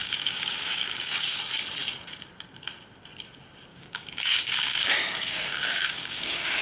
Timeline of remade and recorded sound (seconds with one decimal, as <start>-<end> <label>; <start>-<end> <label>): 0.0-1.4 remade; 1.4-3.7 recorded; 3.7-6.6 remade